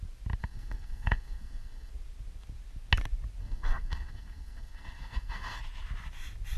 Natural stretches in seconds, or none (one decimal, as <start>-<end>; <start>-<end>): 0.0-0.4; 1.9-3.4; 5.6-6.6